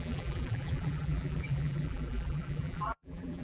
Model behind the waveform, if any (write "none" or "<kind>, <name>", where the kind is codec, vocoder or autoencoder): vocoder, BigVGAN v2